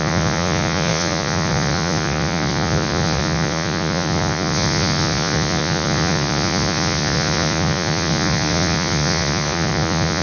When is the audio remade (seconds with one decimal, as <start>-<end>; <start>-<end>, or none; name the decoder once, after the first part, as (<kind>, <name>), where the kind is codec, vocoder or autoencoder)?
0.0-10.2 (vocoder, Vocos)